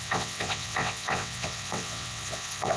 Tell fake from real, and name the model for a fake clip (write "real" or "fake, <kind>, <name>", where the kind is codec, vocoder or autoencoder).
fake, vocoder, WaveNeXt